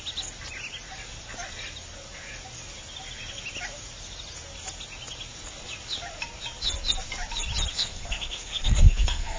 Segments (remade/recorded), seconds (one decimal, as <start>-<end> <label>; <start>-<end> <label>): 0.0-7.7 recorded; 7.7-9.4 remade